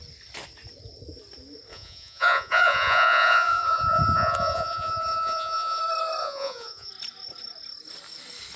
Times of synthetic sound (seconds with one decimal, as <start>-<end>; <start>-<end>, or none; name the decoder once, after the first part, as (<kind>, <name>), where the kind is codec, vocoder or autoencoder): 1.7-5.8 (vocoder, Vocos); 6.2-6.9